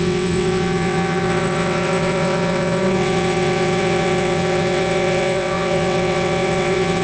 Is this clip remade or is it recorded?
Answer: remade